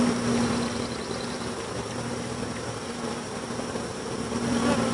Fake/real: fake